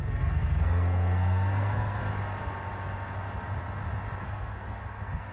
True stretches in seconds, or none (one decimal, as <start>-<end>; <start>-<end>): 2.0-4.2